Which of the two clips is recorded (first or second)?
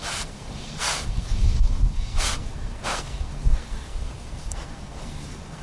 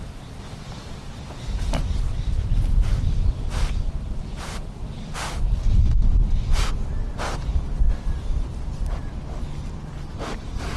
second